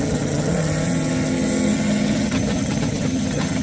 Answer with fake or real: fake